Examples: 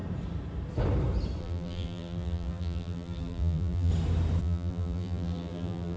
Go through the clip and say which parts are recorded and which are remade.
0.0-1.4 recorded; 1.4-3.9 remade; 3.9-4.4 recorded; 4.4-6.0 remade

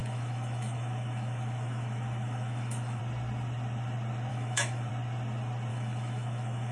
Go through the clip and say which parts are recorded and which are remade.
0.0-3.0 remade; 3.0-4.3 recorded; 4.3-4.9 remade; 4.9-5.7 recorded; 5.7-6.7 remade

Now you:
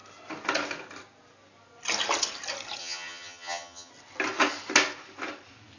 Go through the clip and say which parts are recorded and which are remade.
0.0-2.8 recorded; 2.8-3.9 remade; 3.9-5.8 recorded

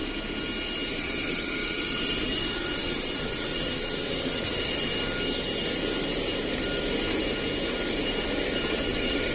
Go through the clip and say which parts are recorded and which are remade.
0.0-0.9 recorded; 0.9-4.9 remade; 4.9-8.6 recorded; 8.6-9.3 remade

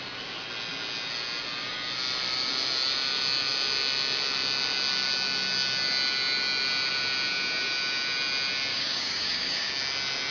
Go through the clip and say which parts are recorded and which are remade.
0.0-8.7 recorded; 8.7-9.7 remade; 9.7-10.3 recorded

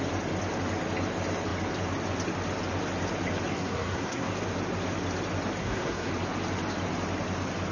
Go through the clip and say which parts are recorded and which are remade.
0.0-3.5 recorded; 3.5-4.3 remade; 4.3-5.6 recorded; 5.6-6.1 remade; 6.1-7.7 recorded

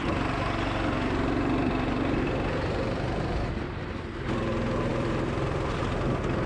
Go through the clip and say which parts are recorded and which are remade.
0.0-4.9 recorded; 4.9-5.8 remade; 5.8-6.5 recorded